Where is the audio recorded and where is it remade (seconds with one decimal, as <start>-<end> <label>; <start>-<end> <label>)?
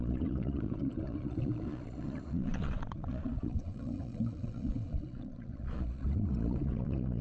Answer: 0.0-7.2 remade